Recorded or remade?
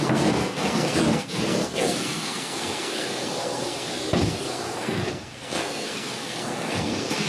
remade